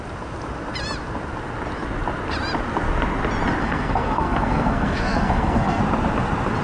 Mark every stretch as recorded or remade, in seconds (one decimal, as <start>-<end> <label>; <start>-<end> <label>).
0.0-3.6 recorded; 3.6-5.8 remade; 5.8-6.6 recorded